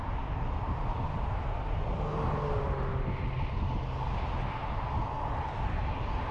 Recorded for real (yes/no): yes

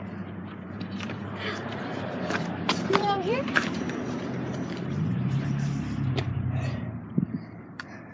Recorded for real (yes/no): no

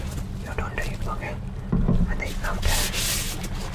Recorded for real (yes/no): yes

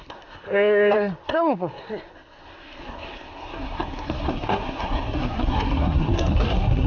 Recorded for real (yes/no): no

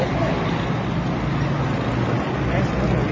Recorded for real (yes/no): yes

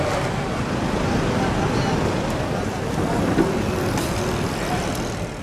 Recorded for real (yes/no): yes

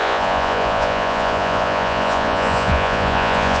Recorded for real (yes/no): no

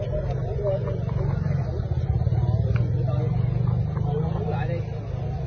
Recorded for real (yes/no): yes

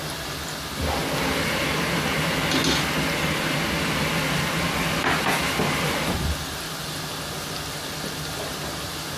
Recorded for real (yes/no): yes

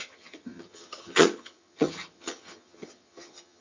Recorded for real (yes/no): no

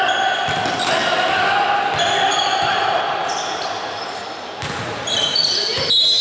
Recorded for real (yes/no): yes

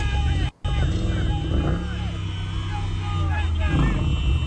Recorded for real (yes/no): yes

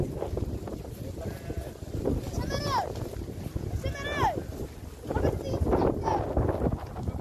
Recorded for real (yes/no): yes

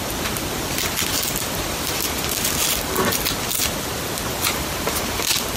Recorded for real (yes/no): yes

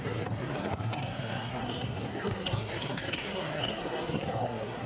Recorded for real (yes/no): no